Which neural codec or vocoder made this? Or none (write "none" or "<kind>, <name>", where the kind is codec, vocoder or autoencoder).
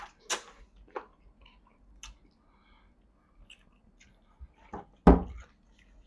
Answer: none